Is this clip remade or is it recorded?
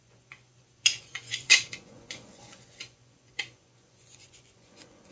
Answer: remade